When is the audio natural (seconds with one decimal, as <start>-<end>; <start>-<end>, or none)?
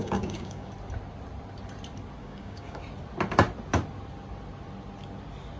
0.7-2.2; 2.8-5.6